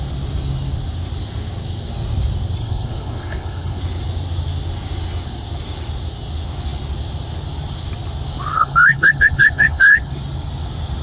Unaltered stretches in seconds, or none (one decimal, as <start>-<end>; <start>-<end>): 0.0-2.6; 3.8-8.5; 10.1-11.0